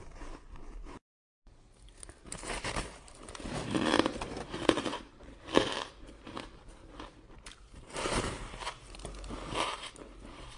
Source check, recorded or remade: remade